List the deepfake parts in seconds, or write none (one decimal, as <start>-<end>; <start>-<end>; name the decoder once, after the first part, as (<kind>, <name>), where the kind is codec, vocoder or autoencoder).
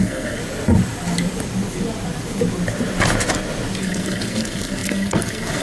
0.0-0.4 (codec, SNAC); 3.8-5.6